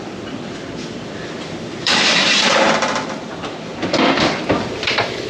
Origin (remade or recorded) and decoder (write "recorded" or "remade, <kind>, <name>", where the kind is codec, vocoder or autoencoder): remade, vocoder, BigVGAN v2